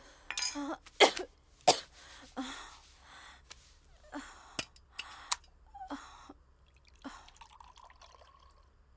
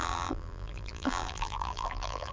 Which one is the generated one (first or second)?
second